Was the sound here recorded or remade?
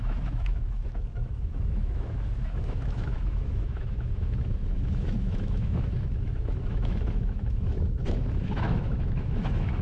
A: remade